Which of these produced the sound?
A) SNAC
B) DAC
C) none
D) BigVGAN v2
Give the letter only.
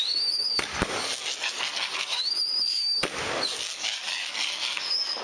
B